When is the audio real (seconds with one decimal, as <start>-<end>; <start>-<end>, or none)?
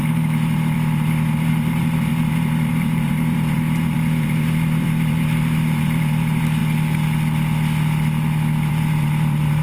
6.6-8.7